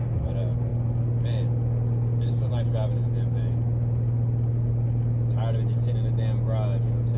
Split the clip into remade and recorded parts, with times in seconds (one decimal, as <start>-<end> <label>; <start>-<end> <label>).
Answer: 0.0-7.2 recorded